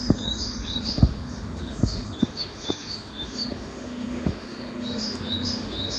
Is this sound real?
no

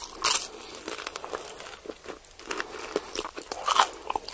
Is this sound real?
yes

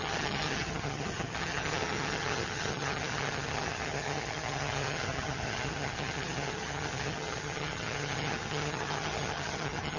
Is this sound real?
no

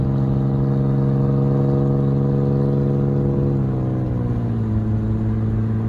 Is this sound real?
yes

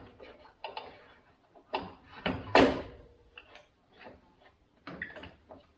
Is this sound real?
no